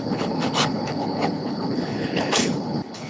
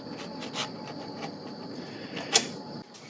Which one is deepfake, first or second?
first